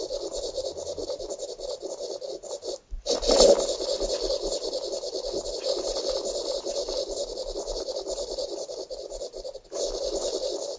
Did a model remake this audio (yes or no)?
no